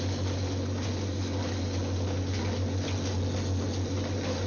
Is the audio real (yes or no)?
yes